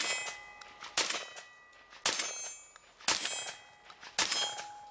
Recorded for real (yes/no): yes